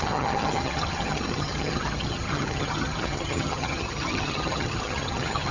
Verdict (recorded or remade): remade